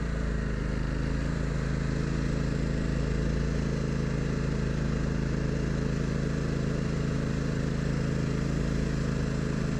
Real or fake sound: real